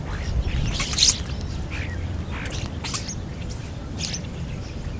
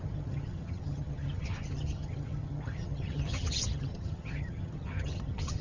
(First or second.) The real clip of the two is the first